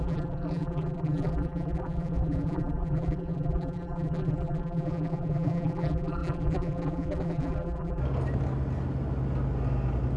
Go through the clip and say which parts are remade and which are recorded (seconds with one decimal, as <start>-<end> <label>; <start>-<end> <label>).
0.0-8.0 remade; 8.0-10.2 recorded

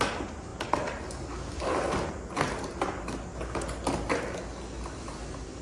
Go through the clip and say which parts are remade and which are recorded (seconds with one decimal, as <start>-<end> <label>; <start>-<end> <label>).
0.0-5.6 recorded